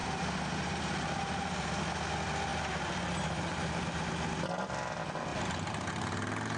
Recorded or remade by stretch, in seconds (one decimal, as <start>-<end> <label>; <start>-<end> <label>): 0.0-1.8 remade; 1.8-3.5 recorded; 3.5-4.1 remade; 4.1-5.3 recorded; 5.3-5.9 remade; 5.9-6.6 recorded